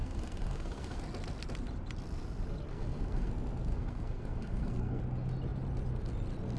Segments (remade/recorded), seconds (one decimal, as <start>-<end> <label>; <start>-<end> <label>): 0.0-1.0 remade; 1.0-2.7 recorded; 2.7-3.3 remade; 3.3-3.7 recorded; 3.7-5.0 remade; 5.0-6.6 recorded